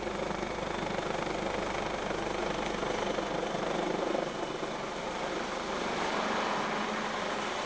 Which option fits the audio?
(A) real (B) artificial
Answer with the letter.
A